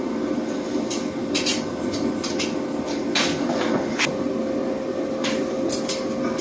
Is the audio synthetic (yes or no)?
no